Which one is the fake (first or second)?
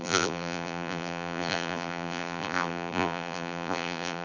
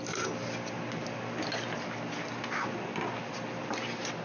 first